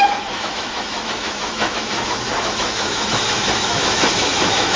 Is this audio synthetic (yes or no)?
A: yes